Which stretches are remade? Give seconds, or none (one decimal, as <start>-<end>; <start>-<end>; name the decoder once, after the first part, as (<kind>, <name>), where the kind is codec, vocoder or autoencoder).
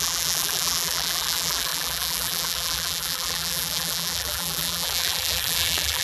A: 0.0-6.0 (vocoder, BigVGAN v2)